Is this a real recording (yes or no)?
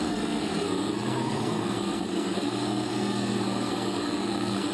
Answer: no